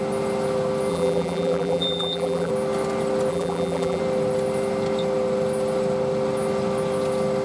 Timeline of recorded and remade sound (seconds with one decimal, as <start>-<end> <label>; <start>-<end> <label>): 0.0-0.9 recorded; 0.9-2.5 remade; 2.5-3.3 recorded; 3.3-4.0 remade; 4.0-7.4 recorded